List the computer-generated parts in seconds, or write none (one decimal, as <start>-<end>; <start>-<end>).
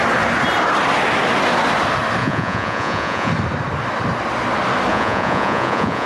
2.2-3.3; 4.9-6.1